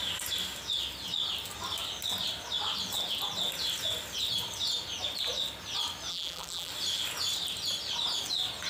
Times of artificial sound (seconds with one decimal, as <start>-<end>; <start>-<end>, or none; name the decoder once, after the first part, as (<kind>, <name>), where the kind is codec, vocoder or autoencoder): 6.1-6.7 (vocoder, BigVGAN v2)